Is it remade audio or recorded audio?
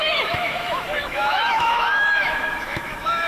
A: remade